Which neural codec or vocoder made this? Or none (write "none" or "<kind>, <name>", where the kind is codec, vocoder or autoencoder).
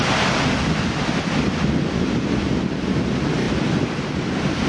none